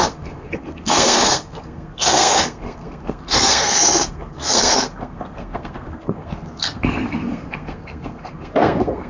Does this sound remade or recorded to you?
remade